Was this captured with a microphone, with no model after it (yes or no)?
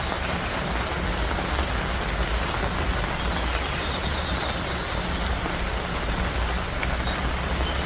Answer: yes